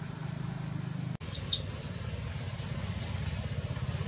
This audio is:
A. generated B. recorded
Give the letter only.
B